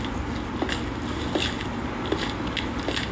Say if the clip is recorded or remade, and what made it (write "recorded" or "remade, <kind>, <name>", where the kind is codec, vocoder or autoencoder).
recorded